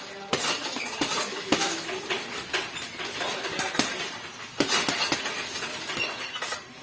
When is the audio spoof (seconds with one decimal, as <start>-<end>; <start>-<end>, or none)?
1.3-1.9